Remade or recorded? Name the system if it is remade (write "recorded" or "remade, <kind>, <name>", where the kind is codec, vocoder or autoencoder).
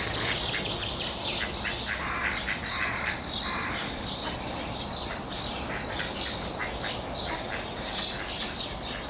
recorded